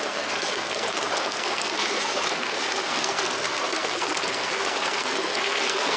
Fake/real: fake